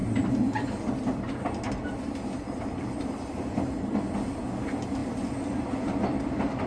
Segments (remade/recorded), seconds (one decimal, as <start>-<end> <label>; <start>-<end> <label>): 0.0-6.7 recorded